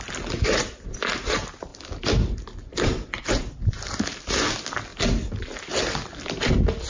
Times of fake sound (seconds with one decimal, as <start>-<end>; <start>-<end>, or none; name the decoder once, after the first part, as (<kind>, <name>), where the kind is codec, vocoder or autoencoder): none